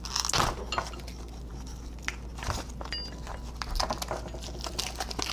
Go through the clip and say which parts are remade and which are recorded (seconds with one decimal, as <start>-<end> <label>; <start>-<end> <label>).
0.0-5.3 recorded